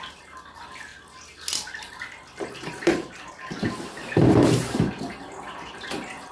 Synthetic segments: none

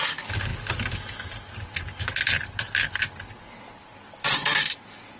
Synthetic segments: 0.0-0.5 (vocoder, BigVGAN v2); 3.6-5.2

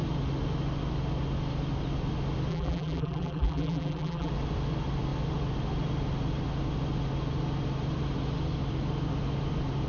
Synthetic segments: 2.5-4.3 (vocoder, BigVGAN v2)

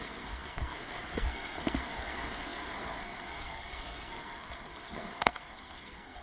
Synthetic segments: 0.0-6.2 (codec, SNAC)